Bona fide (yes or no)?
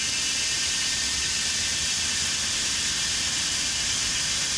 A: yes